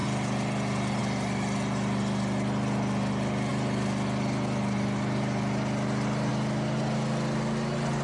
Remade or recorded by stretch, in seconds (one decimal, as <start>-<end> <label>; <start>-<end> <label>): 0.0-8.0 recorded